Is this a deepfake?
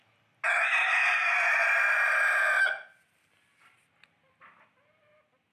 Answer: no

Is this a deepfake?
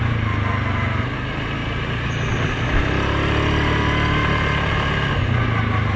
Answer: no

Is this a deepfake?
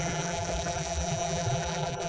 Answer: yes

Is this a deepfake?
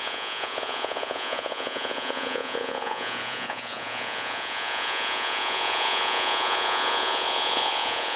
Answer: yes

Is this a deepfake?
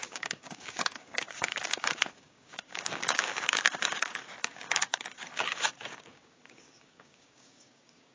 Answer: yes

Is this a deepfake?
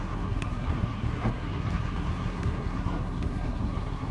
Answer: yes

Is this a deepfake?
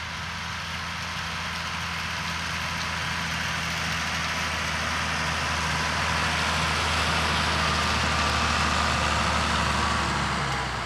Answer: no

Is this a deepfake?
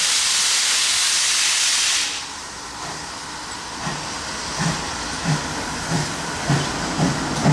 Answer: no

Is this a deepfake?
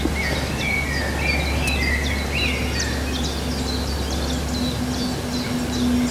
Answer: no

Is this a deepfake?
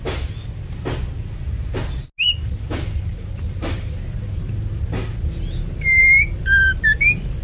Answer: no